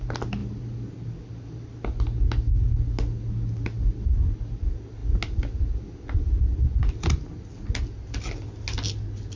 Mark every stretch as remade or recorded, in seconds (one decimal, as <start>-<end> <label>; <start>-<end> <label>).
0.0-9.4 recorded